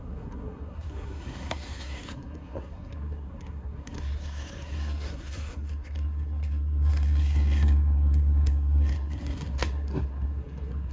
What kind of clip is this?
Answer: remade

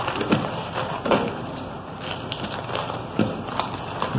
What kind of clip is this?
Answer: remade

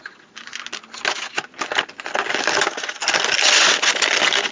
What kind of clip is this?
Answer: recorded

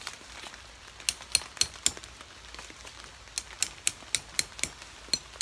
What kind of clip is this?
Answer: recorded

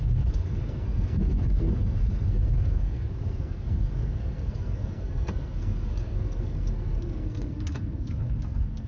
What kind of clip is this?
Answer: remade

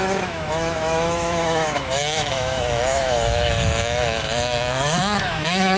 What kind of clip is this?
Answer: remade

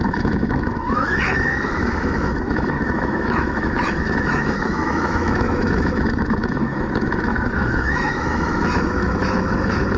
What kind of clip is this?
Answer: remade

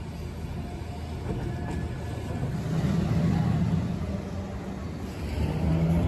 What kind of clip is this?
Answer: recorded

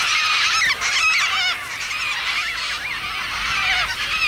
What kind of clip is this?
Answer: recorded